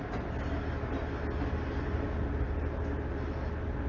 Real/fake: real